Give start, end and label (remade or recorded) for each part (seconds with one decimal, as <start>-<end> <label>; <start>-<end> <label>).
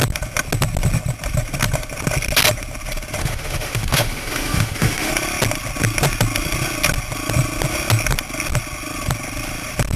0.0-3.2 recorded; 3.2-5.1 remade; 5.1-10.0 recorded